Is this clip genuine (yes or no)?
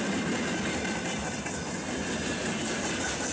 yes